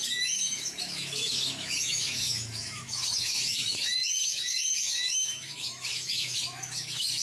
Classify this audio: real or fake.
fake